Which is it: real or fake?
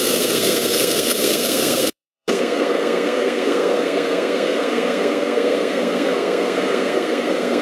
fake